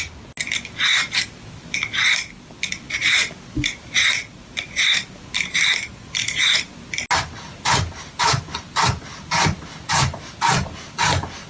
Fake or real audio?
real